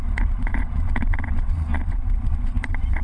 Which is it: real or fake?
fake